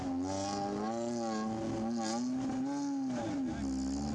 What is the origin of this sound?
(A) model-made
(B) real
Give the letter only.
B